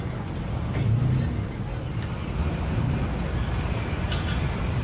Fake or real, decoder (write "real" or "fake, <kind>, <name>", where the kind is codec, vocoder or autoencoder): real